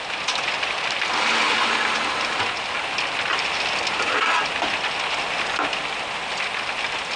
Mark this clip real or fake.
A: real